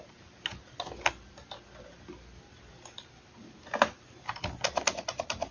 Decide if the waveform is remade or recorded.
recorded